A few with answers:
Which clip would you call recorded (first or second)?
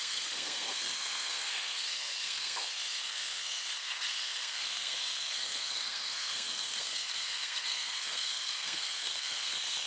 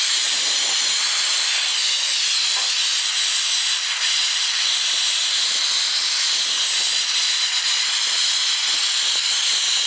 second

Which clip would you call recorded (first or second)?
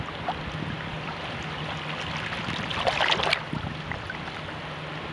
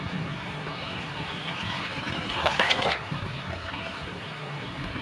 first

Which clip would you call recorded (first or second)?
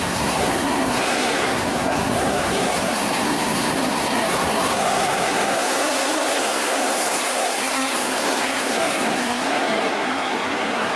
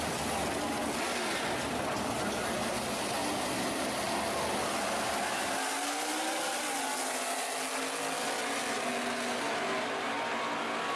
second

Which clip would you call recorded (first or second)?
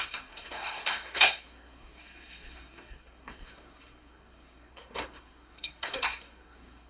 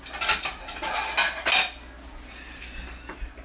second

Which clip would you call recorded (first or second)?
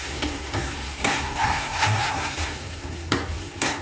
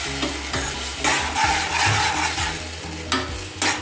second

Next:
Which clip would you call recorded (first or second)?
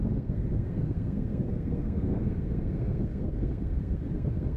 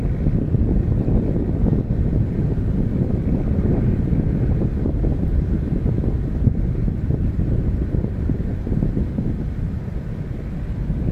second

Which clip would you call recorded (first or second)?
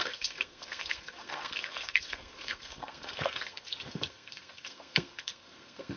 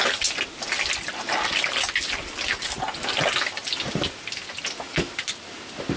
second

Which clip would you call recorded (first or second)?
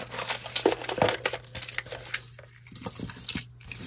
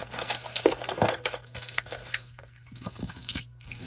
first